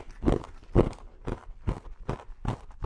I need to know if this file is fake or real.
real